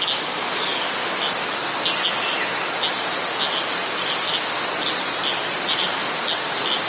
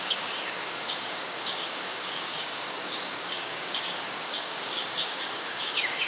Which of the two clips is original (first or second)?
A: first